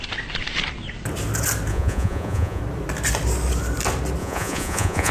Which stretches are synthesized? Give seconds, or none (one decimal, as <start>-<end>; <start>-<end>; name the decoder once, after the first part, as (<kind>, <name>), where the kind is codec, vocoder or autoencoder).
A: 1.7-2.6 (vocoder, Vocos); 4.2-5.1